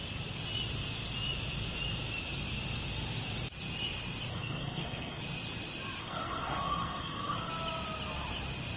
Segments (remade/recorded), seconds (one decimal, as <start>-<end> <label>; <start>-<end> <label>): 0.0-4.3 recorded; 4.3-5.2 remade; 5.2-6.0 recorded; 6.0-7.5 remade; 7.5-8.8 recorded